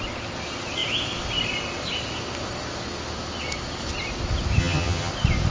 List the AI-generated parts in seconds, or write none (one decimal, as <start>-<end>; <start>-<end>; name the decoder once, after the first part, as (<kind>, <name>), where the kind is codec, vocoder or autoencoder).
4.6-5.1 (vocoder, HiFi-GAN)